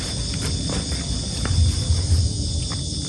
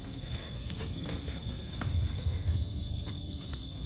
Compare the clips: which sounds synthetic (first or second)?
second